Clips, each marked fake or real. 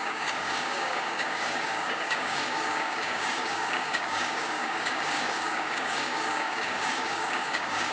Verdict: fake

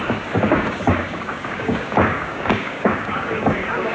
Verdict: fake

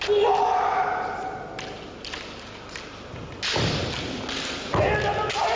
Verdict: real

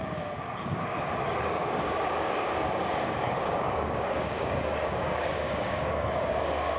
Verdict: fake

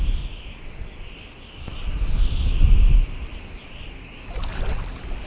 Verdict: real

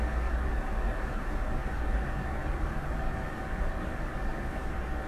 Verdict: fake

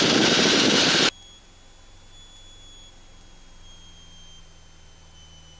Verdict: real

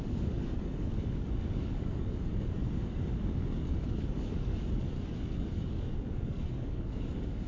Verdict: fake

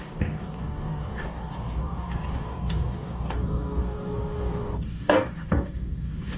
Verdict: fake